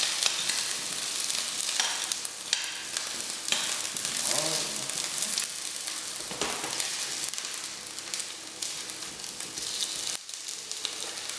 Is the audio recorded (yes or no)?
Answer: yes